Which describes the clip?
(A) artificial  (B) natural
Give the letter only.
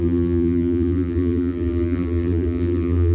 A